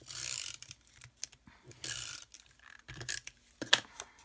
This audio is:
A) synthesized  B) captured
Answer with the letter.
A